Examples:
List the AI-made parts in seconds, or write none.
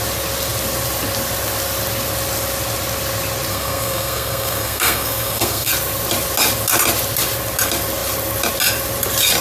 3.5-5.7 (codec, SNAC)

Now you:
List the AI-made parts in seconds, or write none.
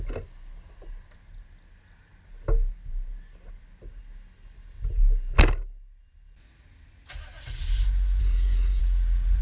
8.2-8.8 (codec, SNAC)